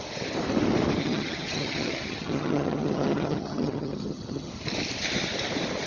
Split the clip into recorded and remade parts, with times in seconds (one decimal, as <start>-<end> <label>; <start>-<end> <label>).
0.0-1.0 recorded; 1.0-4.5 remade; 4.5-5.9 recorded